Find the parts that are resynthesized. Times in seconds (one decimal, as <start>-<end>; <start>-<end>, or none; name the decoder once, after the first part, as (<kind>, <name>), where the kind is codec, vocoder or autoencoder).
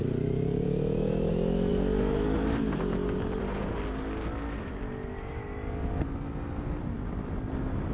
none